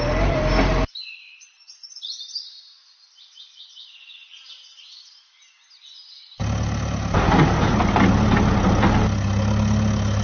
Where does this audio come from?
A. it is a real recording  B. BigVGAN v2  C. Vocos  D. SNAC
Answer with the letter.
A